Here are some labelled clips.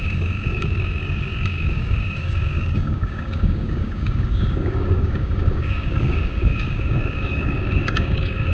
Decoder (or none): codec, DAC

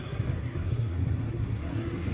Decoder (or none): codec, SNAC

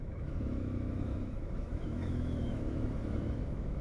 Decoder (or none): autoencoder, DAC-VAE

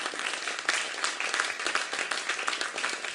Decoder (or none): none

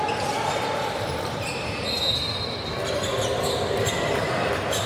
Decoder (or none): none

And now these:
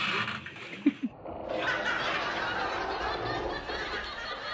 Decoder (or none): none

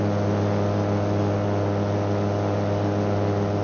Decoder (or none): none